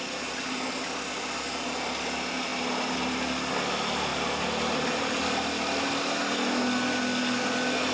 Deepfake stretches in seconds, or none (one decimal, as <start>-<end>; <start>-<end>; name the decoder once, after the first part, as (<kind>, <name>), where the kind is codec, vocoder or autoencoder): 2.5-3.5 (vocoder, BigVGAN v2); 4.1-6.0